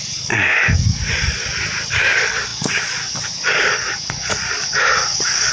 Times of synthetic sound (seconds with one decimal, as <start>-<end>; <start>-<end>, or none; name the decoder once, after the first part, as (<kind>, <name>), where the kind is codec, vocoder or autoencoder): 0.0-1.4 (codec, DAC); 1.9-5.5